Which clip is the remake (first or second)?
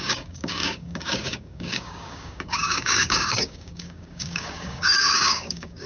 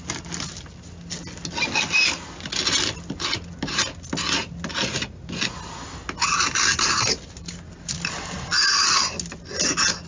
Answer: first